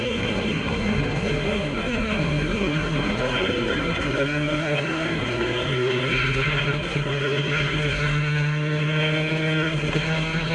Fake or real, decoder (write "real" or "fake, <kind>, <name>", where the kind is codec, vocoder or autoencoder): fake, codec, SNAC